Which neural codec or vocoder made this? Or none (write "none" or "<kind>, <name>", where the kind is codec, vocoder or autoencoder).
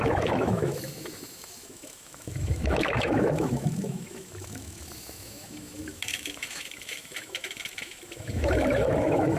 autoencoder, DAC-VAE